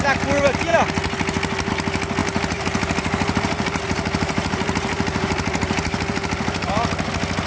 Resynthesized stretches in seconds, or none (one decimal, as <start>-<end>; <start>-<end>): 2.2-6.7